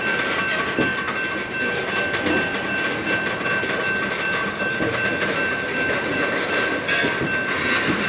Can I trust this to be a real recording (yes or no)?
yes